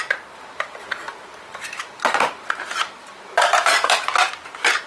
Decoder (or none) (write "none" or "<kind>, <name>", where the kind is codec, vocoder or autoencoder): none